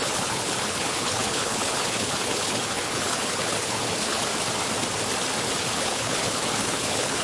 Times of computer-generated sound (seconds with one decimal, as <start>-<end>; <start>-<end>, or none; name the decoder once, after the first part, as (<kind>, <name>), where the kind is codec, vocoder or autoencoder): 0.0-4.3 (codec, HILCodec); 5.6-7.2